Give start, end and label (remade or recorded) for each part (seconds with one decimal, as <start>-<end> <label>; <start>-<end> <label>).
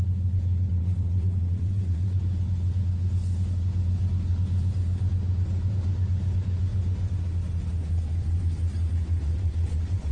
0.0-0.7 recorded; 0.7-2.2 remade; 2.2-9.2 recorded; 9.2-10.1 remade